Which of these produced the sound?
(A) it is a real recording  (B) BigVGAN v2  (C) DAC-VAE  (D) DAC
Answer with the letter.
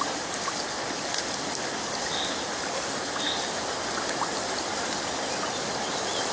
A